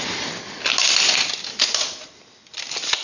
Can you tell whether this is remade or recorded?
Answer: recorded